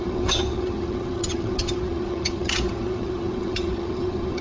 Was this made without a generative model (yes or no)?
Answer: no